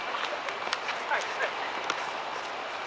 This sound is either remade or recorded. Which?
recorded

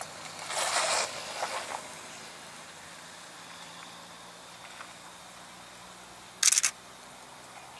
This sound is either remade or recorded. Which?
recorded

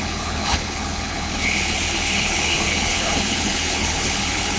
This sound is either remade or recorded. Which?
remade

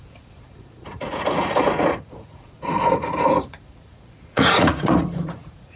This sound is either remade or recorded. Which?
remade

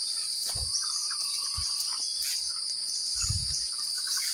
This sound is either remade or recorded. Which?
remade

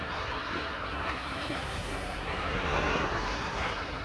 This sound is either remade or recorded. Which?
remade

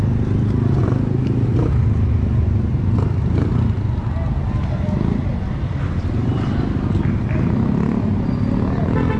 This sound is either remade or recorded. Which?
recorded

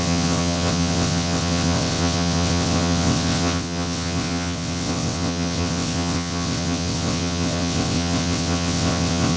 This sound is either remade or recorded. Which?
remade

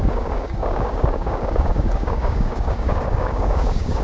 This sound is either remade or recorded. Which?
remade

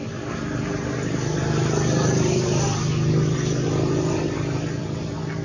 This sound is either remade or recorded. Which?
recorded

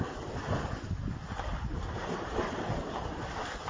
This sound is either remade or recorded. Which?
recorded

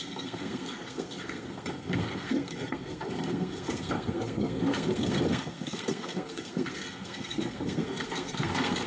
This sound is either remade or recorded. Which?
remade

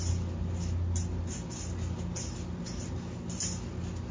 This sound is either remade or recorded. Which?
recorded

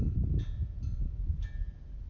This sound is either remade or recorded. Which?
recorded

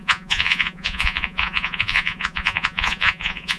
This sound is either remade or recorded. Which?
remade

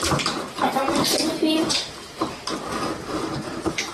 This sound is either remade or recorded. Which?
remade